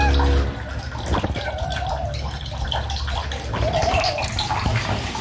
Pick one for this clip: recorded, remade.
recorded